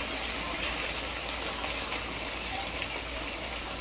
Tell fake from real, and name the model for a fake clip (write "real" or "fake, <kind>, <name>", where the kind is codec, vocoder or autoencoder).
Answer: real